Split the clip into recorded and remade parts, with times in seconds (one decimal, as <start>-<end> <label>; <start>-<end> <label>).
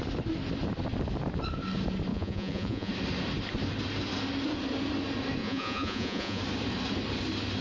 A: 0.0-2.1 recorded; 2.1-2.9 remade; 2.9-5.4 recorded; 5.4-6.4 remade; 6.4-7.6 recorded